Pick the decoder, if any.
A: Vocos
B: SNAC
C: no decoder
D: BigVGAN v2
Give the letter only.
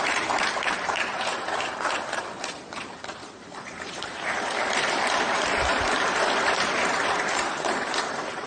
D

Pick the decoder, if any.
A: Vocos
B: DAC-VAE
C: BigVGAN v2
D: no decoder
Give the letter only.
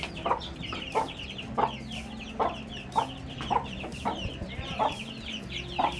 C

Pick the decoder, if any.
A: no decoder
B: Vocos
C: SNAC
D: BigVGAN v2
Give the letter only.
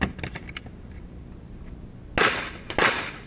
A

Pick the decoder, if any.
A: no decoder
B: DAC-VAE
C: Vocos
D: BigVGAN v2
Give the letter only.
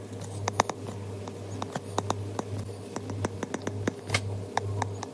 A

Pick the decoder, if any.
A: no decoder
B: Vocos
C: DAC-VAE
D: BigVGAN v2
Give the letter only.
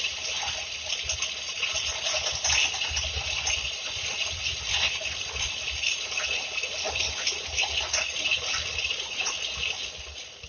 D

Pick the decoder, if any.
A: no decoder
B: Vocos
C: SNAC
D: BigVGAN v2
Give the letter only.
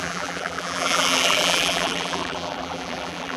D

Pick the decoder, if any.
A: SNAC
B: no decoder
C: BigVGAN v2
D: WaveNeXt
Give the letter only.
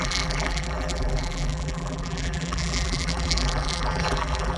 C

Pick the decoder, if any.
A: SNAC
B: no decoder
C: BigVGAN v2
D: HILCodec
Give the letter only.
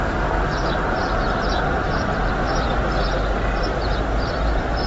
B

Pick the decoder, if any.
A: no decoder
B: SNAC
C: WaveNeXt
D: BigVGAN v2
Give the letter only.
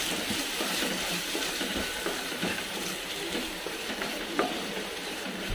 D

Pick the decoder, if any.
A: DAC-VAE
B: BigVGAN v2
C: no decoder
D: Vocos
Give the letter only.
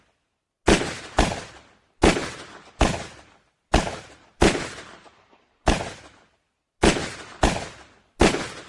C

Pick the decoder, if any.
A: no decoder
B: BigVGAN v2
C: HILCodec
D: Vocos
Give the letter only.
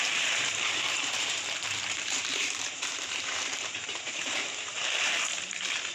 B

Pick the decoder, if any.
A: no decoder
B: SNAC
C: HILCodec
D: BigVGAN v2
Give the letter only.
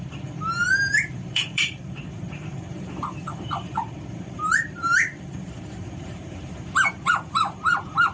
D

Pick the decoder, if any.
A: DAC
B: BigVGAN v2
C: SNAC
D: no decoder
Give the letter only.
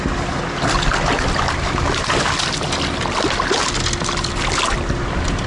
D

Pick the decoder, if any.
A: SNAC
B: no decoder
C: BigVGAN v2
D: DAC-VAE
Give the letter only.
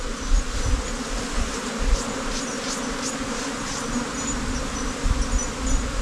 B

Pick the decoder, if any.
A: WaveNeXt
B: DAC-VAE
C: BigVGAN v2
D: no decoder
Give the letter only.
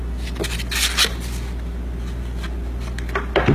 D